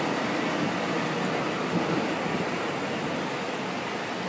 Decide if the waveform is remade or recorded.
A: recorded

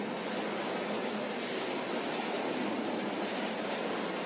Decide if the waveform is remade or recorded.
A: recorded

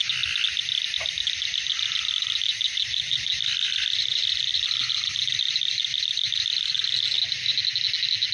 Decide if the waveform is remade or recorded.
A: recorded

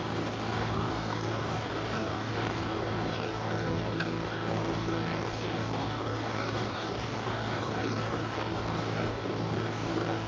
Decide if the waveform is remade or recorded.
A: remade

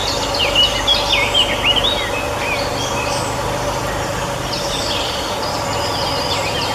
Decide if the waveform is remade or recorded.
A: recorded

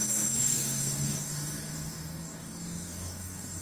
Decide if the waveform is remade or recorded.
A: remade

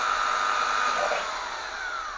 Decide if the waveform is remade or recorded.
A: recorded